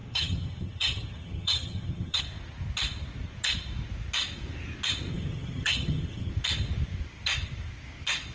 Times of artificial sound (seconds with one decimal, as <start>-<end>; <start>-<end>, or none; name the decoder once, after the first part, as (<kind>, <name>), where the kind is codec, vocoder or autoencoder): 0.0-2.2 (vocoder, HiFi-GAN); 5.1-6.3